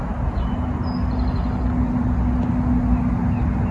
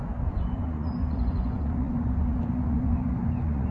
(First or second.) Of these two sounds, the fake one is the second